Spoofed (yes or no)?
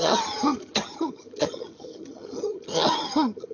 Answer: yes